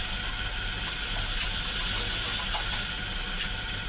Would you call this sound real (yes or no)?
yes